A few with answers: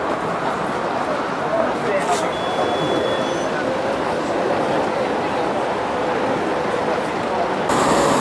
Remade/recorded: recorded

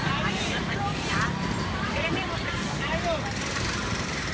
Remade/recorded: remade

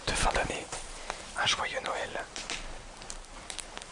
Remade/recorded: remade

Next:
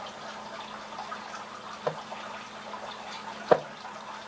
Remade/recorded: recorded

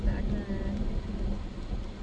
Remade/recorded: recorded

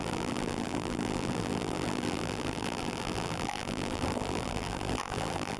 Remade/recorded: remade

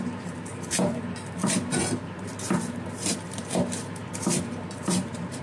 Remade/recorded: remade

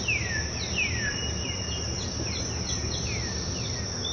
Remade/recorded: recorded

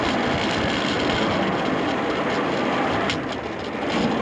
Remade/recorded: recorded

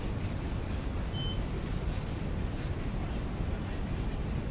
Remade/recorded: recorded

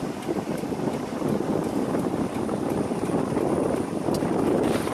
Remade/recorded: recorded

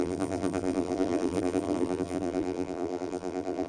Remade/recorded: remade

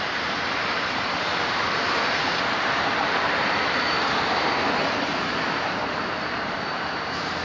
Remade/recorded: remade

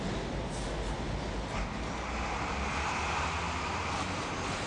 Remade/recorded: recorded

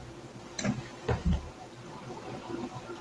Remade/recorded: remade